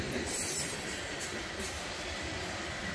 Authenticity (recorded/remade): recorded